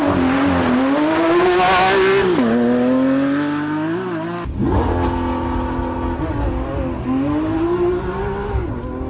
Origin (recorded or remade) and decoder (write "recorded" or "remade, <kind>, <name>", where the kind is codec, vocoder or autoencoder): recorded